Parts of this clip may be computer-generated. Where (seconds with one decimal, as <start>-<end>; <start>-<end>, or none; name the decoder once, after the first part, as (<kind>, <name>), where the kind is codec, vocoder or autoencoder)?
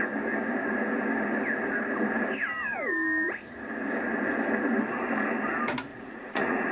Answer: 5.9-6.7 (vocoder, Vocos)